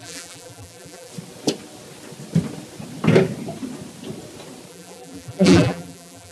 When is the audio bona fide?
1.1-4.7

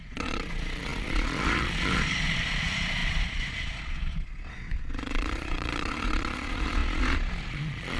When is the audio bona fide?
none

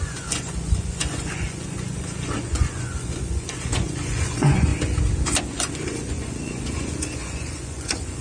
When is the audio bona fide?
4.7-5.5

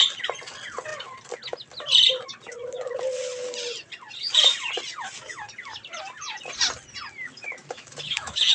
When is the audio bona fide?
0.0-7.6

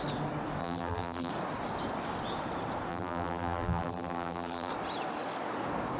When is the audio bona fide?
0.0-0.6; 1.3-2.9; 4.7-6.0